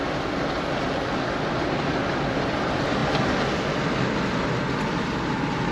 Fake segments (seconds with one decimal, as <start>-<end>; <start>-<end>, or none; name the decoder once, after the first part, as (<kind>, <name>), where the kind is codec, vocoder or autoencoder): none